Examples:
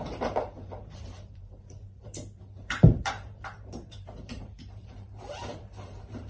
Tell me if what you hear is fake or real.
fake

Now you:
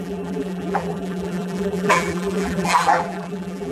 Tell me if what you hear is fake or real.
fake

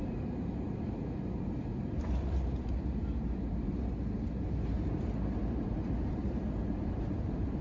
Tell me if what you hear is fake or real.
fake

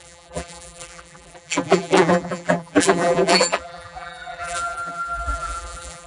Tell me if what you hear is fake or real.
fake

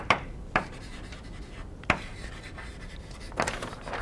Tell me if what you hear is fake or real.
real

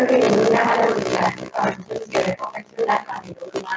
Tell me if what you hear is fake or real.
real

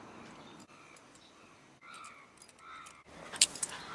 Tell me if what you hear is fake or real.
real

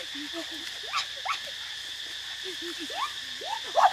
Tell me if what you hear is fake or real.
real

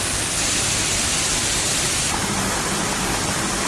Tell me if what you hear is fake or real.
fake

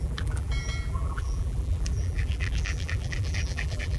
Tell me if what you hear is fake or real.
fake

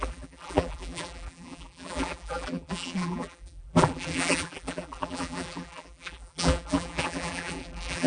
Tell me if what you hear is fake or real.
fake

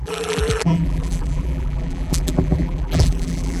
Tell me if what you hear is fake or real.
fake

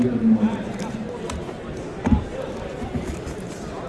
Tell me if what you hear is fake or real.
fake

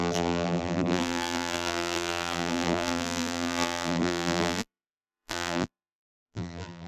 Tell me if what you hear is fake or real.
fake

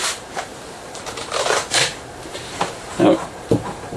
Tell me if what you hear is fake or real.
fake